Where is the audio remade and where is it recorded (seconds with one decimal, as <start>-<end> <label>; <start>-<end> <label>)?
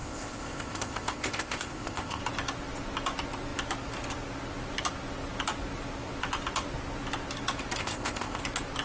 0.0-2.2 remade; 2.2-7.8 recorded; 7.8-8.4 remade; 8.4-8.8 recorded